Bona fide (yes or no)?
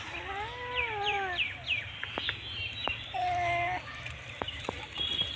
no